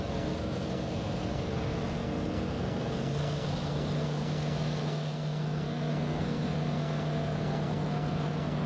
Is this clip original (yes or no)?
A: no